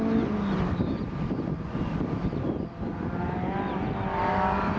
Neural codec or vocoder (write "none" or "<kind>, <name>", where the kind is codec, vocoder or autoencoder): none